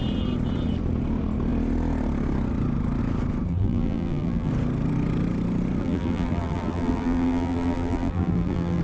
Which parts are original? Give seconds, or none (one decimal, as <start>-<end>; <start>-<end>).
0.0-3.5; 4.5-5.8